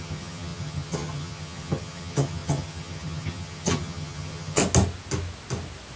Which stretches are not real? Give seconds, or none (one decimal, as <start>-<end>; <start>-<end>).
0.0-4.6